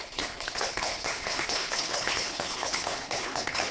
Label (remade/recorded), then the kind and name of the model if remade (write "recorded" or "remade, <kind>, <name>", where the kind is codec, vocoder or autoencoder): remade, codec, HILCodec